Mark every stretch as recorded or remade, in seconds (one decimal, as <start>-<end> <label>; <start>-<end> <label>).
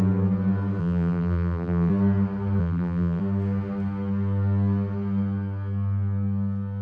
0.0-0.8 recorded; 0.8-1.9 remade; 1.9-2.6 recorded; 2.6-3.2 remade; 3.2-6.8 recorded